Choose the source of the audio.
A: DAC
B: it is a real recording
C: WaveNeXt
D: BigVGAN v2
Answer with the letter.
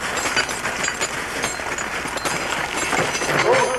B